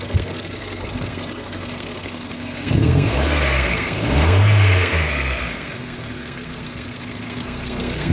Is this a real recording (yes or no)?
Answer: no